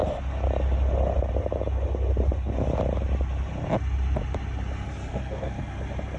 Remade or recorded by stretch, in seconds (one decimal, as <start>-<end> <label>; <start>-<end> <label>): 0.0-5.1 recorded; 5.1-5.7 remade; 5.7-6.2 recorded